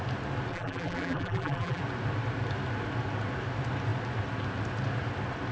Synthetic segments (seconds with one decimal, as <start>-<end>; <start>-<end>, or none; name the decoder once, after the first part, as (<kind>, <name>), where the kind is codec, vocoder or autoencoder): 0.5-1.8 (vocoder, BigVGAN v2)